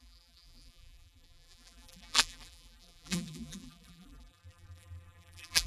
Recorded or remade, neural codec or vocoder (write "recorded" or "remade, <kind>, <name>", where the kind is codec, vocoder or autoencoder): remade, vocoder, BigVGAN v2